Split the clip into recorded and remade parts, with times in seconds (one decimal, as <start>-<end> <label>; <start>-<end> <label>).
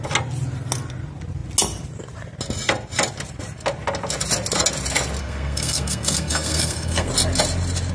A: 0.0-5.2 recorded; 5.2-7.1 remade; 7.1-7.9 recorded